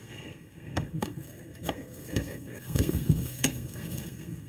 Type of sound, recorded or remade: remade